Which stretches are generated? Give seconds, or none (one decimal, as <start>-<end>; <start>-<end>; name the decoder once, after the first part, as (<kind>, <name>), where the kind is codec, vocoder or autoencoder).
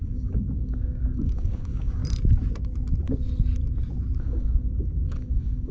0.0-2.0 (codec, DAC); 4.2-5.7